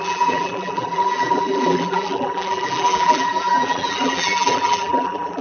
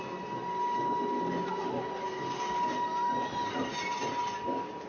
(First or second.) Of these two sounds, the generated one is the first